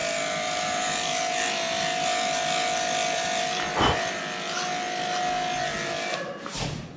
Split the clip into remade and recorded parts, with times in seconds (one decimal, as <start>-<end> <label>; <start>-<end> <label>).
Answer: 0.0-4.2 remade; 4.2-7.0 recorded

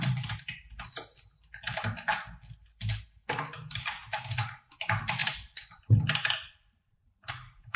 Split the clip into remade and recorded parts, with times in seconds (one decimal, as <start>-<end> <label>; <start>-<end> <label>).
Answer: 0.0-5.2 recorded; 5.2-7.3 remade; 7.3-7.8 recorded

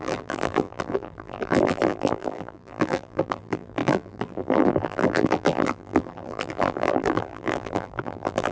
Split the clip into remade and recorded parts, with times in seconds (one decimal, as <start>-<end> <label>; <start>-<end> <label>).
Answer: 0.0-8.5 remade

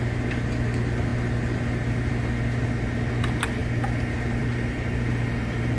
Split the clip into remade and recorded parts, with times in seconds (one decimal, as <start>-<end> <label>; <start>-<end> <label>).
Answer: 0.0-5.8 recorded

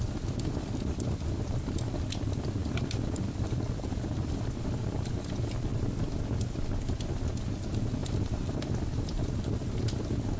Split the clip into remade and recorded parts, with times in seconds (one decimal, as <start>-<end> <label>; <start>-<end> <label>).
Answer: 0.0-2.6 recorded; 2.6-4.6 remade; 4.6-8.0 recorded; 8.0-9.3 remade; 9.3-10.4 recorded

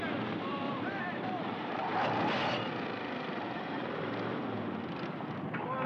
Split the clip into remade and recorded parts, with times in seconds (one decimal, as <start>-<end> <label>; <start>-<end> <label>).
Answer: 0.0-0.5 recorded; 0.5-1.8 remade; 1.8-5.9 recorded

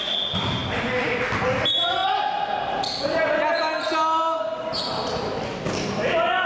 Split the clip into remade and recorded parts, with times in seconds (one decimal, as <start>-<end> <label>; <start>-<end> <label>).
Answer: 0.0-6.5 recorded